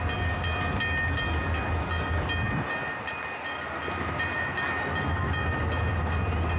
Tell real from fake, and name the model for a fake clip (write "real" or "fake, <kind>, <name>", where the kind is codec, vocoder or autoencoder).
real